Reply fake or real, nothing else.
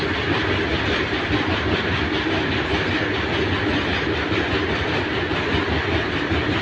real